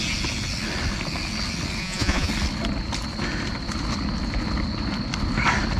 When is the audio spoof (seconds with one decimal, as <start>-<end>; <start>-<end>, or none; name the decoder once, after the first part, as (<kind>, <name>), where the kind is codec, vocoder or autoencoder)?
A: 1.8-2.3 (vocoder, Vocos)